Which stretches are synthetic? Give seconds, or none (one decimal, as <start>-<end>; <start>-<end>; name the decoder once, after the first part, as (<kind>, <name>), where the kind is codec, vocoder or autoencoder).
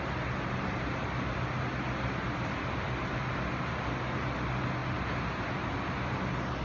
none